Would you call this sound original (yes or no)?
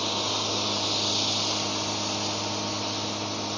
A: yes